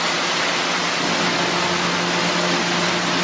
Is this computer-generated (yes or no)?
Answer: no